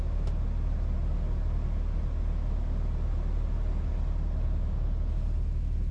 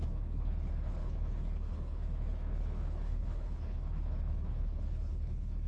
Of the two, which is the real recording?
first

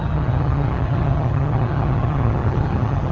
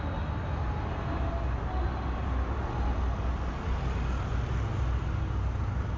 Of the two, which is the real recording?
second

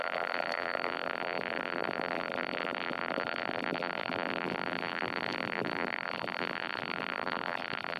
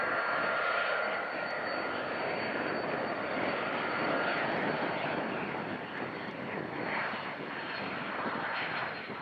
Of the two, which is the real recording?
second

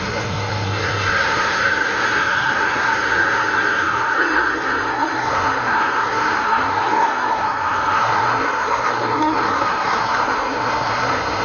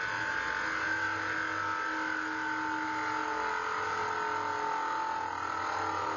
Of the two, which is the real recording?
second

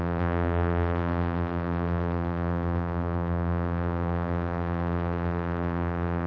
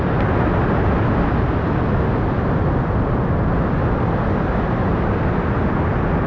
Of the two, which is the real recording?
second